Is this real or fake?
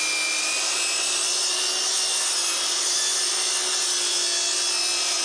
real